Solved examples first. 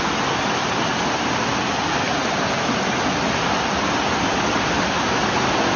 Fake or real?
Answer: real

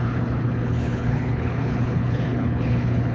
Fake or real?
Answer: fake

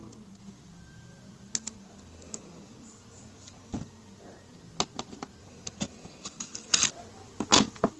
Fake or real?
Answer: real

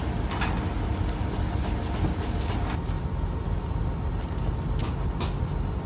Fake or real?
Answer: real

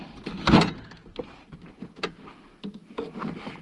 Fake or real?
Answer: real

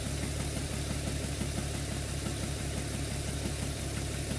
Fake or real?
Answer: real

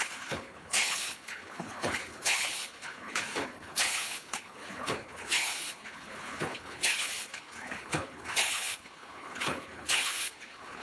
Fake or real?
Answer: fake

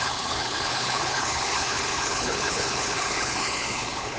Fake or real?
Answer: fake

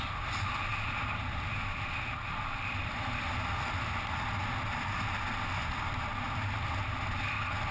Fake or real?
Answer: real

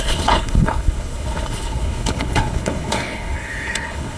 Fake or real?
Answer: fake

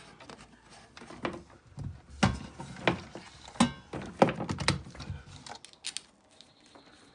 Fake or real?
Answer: real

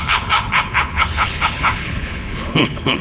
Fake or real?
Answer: fake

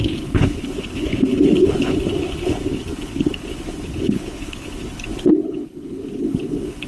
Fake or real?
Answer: fake